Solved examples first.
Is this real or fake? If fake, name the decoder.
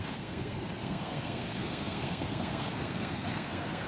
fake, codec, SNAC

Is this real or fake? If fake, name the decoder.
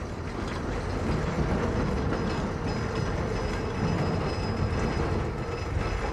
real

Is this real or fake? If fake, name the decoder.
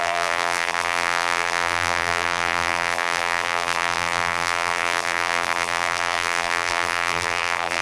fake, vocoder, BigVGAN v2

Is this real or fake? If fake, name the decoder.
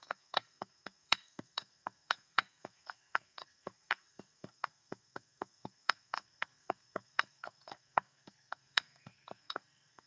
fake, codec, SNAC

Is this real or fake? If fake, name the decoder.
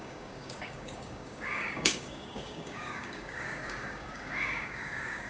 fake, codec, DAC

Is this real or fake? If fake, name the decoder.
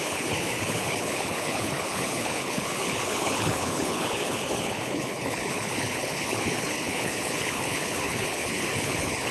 fake, codec, HILCodec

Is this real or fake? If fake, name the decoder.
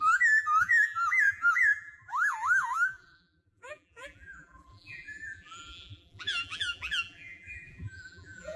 fake, vocoder, BigVGAN v2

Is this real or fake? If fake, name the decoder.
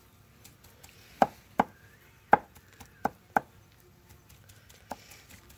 fake, vocoder, BigVGAN v2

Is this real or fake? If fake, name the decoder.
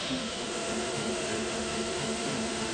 fake, autoencoder, DAC-VAE